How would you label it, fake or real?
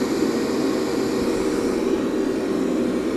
real